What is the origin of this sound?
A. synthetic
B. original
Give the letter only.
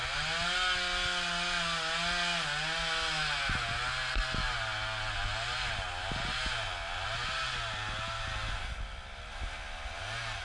B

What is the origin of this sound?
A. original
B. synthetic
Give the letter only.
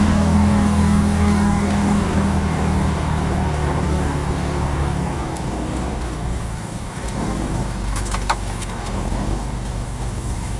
B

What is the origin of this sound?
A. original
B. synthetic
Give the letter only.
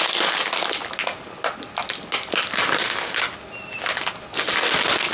A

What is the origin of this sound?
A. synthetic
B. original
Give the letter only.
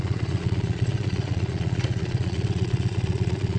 A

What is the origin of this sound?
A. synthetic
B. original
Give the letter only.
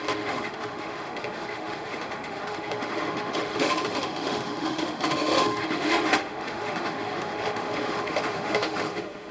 A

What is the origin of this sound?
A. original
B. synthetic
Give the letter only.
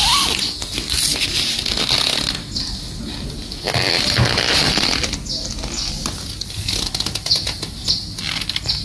A